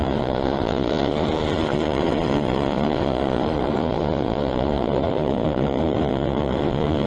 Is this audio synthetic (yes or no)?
yes